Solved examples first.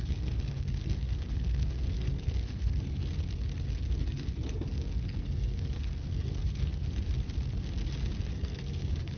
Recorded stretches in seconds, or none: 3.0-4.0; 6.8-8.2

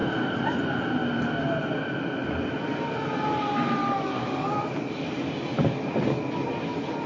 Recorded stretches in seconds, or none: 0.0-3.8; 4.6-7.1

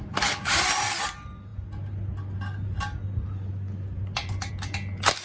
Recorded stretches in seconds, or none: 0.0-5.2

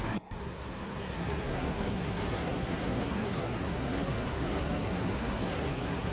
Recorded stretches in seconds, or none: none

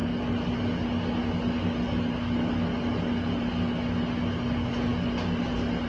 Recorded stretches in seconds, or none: 0.0-5.9

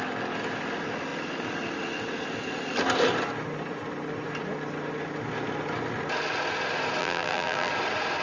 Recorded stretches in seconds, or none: 0.0-7.0; 7.7-8.2